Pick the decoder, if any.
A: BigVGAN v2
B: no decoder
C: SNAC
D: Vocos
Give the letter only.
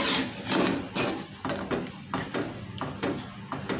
B